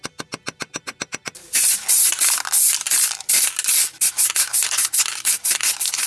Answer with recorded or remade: recorded